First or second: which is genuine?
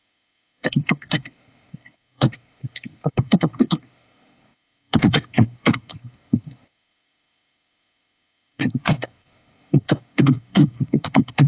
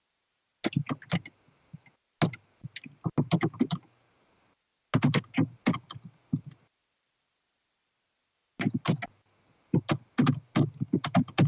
second